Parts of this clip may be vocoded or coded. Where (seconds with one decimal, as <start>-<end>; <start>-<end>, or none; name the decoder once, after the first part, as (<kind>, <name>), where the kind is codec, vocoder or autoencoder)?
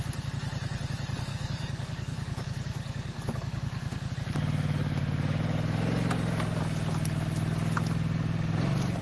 1.3-4.1 (codec, DAC)